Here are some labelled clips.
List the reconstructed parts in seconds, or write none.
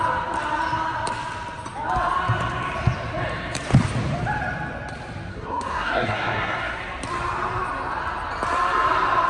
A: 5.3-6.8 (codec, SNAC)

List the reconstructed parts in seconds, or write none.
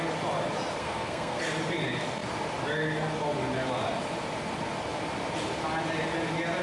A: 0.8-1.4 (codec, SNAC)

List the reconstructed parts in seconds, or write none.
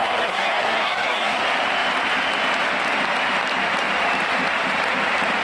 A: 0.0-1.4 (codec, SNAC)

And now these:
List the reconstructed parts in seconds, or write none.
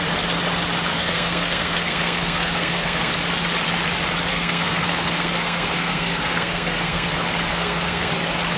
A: 0.9-3.1 (codec, SNAC); 4.3-7.1; 7.5-8.1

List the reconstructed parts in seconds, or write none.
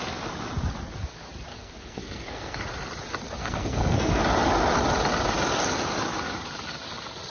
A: 1.5-2.6 (codec, SNAC); 3.4-4.2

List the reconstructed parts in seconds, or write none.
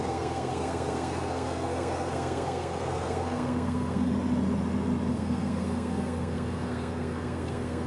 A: 0.0-4.1 (codec, SNAC); 5.1-7.9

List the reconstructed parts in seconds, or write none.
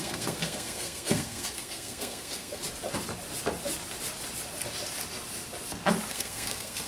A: 0.0-2.6 (codec, SNAC); 6.1-6.9